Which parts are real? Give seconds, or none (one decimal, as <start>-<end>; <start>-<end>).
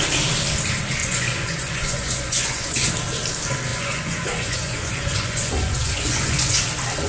0.0-1.0; 2.9-3.7; 6.6-7.1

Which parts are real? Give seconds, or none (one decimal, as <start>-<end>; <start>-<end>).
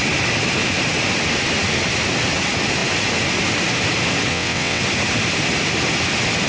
0.0-4.3; 4.8-6.5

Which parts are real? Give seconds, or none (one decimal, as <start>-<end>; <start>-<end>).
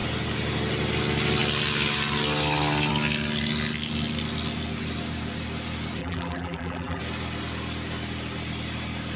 0.0-6.0; 7.0-9.2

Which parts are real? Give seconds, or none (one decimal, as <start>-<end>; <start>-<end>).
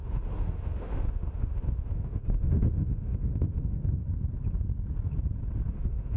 4.0-5.7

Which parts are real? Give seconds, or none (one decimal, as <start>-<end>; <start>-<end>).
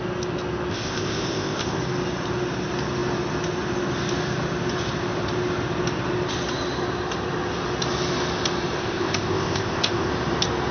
0.0-0.7; 1.8-8.8; 10.1-10.7